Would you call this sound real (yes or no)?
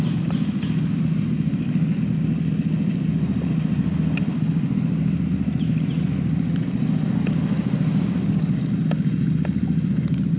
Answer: yes